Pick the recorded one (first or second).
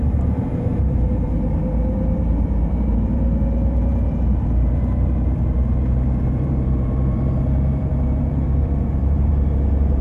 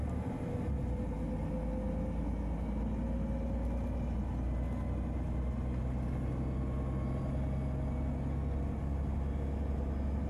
second